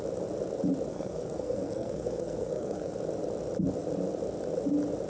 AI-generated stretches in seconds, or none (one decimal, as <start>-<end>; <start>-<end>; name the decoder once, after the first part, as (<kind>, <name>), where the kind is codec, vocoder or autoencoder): 0.9-2.9 (codec, SNAC)

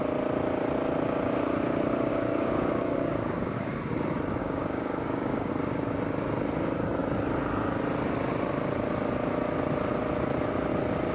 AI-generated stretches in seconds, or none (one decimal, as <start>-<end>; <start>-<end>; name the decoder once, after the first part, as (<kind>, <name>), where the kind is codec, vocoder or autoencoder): 2.1-3.8 (codec, DAC); 4.4-5.5

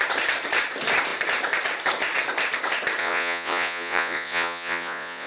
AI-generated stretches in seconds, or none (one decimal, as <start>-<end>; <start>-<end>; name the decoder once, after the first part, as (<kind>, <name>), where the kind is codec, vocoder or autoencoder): 3.0-5.3 (vocoder, Vocos)

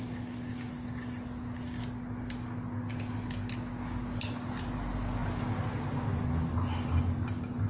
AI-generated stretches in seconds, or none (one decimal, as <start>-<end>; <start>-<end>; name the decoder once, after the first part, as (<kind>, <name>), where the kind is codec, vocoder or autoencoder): none

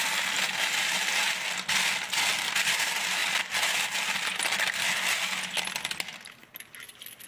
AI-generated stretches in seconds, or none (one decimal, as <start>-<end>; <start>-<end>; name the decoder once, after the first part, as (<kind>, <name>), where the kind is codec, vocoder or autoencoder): none

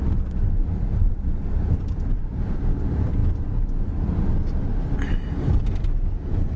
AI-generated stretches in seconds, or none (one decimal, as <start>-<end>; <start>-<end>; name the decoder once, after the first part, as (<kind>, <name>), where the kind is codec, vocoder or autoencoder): 0.6-2.4 (vocoder, BigVGAN v2)